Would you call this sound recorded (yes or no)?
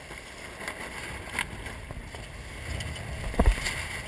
yes